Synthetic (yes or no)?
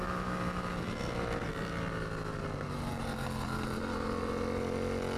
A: no